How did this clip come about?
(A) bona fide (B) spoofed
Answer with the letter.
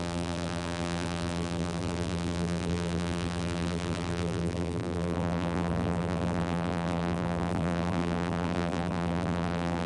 B